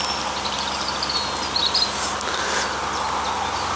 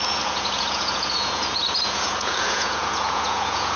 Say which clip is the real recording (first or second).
first